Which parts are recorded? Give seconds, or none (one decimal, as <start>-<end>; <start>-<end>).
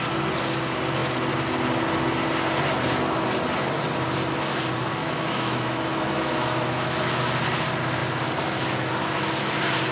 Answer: 0.0-5.0; 7.2-9.9